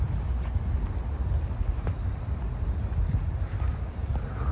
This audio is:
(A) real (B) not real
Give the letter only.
A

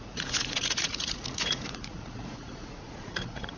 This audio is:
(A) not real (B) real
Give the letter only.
A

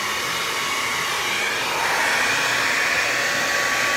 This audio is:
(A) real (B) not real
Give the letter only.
A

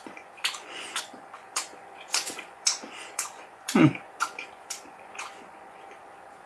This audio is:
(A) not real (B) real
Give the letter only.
A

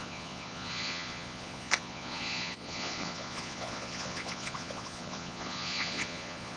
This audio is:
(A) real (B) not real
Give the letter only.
B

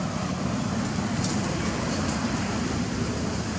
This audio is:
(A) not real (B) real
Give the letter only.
B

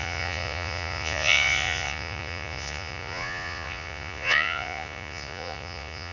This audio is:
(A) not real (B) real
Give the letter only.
A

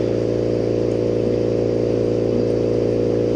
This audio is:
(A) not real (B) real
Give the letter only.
B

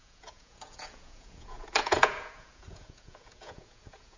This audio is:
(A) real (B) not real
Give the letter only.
B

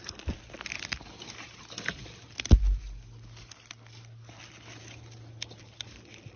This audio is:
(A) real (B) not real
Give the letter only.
A